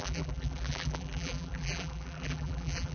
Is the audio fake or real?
fake